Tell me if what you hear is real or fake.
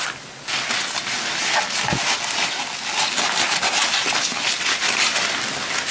real